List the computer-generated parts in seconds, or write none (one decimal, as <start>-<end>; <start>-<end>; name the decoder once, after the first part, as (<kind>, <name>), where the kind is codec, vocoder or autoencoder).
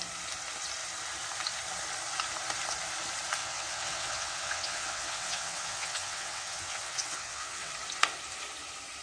3.4-7.7 (vocoder, WaveNeXt)